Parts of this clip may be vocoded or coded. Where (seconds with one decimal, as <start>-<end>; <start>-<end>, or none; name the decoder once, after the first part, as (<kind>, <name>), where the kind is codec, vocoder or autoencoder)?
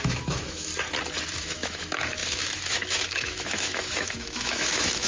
0.0-0.7 (autoencoder, DAC-VAE); 1.3-5.1